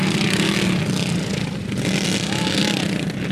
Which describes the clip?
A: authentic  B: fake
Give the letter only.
A